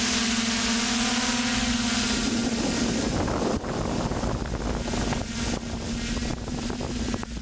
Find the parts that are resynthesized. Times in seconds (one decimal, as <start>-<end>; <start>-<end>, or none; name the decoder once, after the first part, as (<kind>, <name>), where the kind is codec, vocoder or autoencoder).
none

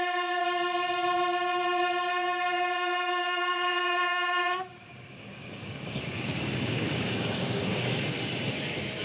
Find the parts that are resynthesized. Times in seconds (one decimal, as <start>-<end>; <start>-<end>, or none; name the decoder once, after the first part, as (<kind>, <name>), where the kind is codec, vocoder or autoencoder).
0.0-0.4 (codec, DAC); 2.1-8.1

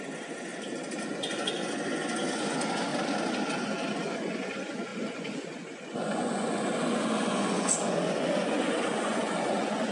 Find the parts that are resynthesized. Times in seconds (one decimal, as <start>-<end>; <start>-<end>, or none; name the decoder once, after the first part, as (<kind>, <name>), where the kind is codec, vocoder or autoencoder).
0.0-0.5 (vocoder, Vocos); 1.1-2.9; 3.6-9.9

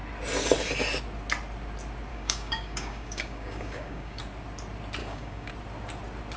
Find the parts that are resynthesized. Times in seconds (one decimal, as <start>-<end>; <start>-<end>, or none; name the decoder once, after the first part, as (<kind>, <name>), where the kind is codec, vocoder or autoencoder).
2.1-4.2 (codec, DAC); 5.0-5.5

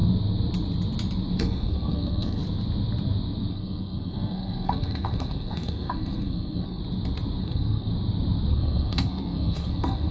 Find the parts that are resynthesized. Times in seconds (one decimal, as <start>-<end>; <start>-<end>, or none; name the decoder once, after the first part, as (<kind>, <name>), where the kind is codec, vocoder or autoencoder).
1.4-2.4 (codec, SNAC); 3.5-6.8; 7.4-7.9; 8.5-10.1

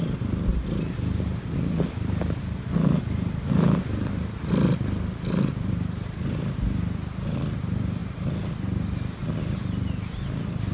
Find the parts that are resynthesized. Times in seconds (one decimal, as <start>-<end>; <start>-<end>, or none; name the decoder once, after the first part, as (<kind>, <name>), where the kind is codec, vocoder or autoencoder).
none

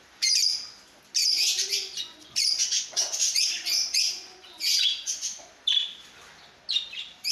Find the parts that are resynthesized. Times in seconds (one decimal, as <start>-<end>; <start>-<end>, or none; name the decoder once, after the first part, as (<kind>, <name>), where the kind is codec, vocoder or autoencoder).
1.2-5.5 (vocoder, Vocos)

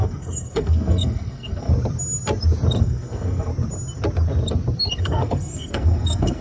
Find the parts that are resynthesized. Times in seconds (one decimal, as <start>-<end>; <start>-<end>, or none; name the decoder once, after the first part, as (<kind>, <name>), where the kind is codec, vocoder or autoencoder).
0.0-1.7 (codec, SNAC); 2.8-3.5; 5.0-6.4